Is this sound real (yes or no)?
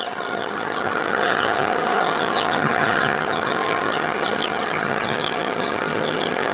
no